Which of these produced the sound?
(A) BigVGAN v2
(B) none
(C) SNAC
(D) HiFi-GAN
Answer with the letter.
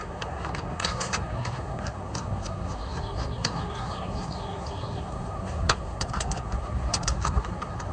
C